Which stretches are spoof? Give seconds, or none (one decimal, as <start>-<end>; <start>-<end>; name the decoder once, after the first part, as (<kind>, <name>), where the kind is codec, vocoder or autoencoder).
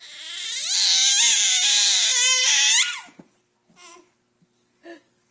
none